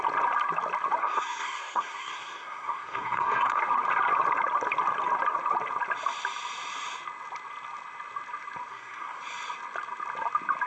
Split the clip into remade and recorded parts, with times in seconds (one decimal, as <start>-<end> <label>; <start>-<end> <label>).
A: 0.0-1.0 recorded; 1.0-3.6 remade; 3.6-8.7 recorded; 8.7-9.2 remade; 9.2-10.7 recorded